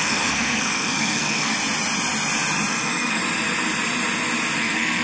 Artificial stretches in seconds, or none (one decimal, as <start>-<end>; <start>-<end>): 0.0-1.5; 2.7-3.2; 4.6-5.0